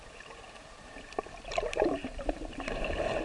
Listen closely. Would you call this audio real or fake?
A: fake